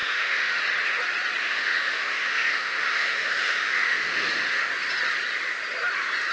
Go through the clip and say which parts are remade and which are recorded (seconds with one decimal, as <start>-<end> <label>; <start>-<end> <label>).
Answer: 0.0-0.6 remade; 0.6-1.4 recorded; 1.4-4.7 remade; 4.7-6.3 recorded